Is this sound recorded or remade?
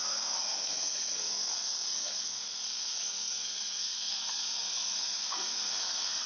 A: remade